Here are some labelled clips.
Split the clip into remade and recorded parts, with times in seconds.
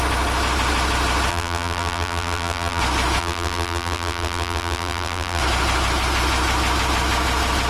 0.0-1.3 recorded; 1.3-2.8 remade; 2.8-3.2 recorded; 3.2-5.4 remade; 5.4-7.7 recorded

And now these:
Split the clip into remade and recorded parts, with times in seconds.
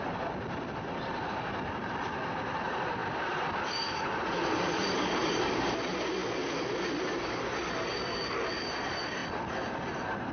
0.0-10.3 recorded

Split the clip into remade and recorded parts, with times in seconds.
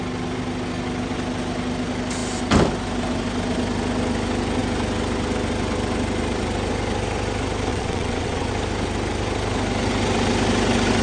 0.0-7.7 recorded; 7.7-8.5 remade; 8.5-11.0 recorded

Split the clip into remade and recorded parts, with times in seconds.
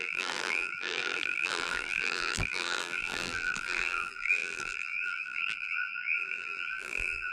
0.0-7.3 remade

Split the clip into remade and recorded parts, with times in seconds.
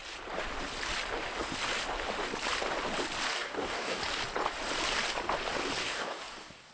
0.0-3.3 recorded; 3.3-4.0 remade; 4.0-5.8 recorded; 5.8-6.7 remade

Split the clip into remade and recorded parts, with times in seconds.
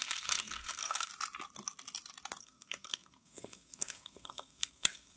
0.0-1.1 remade; 1.1-2.4 recorded; 2.4-5.2 remade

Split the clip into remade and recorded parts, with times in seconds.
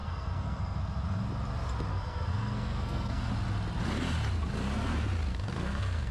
0.0-0.8 remade; 0.8-1.9 recorded; 1.9-3.3 remade; 3.3-5.3 recorded; 5.3-6.1 remade